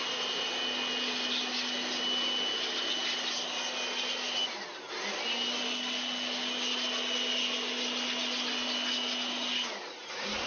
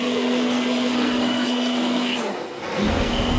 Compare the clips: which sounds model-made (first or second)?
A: second